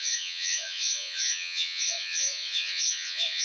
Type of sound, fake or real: fake